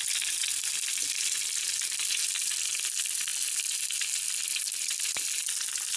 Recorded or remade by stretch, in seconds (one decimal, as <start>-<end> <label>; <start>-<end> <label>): 0.0-6.0 recorded